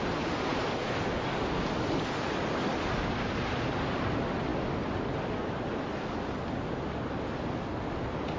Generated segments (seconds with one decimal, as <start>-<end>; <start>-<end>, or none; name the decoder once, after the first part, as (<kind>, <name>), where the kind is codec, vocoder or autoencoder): none